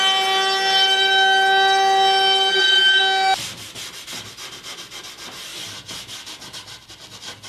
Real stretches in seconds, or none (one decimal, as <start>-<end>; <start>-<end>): 0.0-2.5; 3.0-7.5